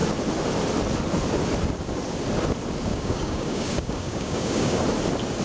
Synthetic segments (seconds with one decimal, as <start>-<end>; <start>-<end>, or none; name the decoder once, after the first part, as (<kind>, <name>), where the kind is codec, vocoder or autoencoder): 2.9-4.8 (codec, DAC)